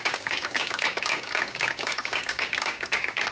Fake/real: fake